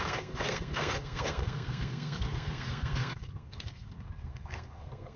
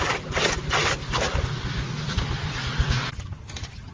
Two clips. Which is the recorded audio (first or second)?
second